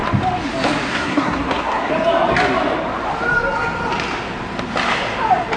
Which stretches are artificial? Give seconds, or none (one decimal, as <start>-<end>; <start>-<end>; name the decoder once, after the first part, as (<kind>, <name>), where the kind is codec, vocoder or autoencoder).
0.9-1.9 (codec, SNAC)